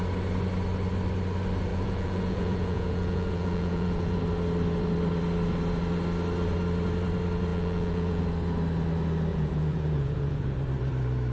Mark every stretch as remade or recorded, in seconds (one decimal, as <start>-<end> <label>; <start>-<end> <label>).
0.0-1.7 recorded; 1.7-4.2 remade; 4.2-7.5 recorded; 7.5-8.2 remade; 8.2-9.3 recorded; 9.3-10.4 remade; 10.4-11.3 recorded